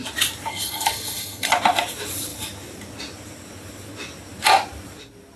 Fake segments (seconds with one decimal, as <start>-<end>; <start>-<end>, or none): 0.5-1.5

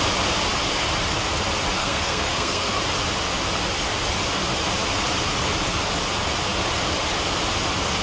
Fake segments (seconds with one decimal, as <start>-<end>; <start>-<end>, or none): 1.8-2.8

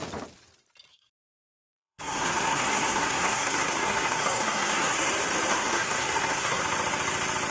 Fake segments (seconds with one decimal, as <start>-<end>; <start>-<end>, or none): 0.9-5.1; 5.5-6.6